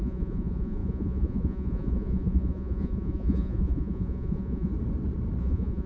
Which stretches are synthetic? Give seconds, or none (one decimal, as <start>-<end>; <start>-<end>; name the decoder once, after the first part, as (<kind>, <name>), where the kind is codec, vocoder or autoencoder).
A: 0.0-4.7 (vocoder, Vocos); 5.4-5.9